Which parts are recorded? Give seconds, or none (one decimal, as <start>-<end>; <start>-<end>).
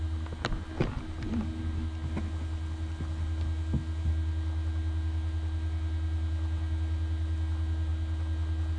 0.0-8.8